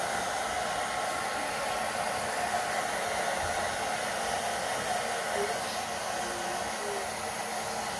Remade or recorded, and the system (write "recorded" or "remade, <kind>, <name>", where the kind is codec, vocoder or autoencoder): recorded